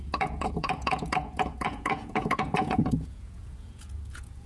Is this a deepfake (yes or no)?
yes